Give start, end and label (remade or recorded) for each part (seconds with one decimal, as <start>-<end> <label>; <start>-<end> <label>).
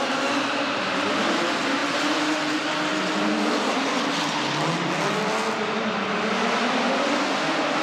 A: 0.0-7.8 recorded